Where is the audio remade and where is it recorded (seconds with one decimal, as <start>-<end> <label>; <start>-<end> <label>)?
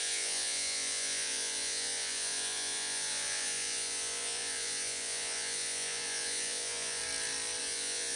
0.0-7.0 remade; 7.0-7.6 recorded; 7.6-8.2 remade